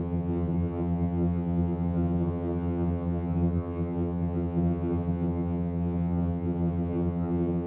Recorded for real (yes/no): no